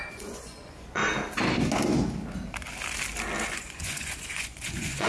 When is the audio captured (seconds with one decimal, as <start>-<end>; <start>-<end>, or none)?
1.0-3.5